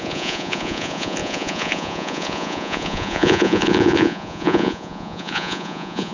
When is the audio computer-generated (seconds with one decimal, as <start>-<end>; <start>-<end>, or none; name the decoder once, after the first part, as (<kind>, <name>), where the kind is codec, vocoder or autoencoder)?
0.0-6.1 (vocoder, Vocos)